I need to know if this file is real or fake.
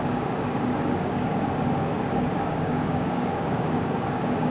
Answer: fake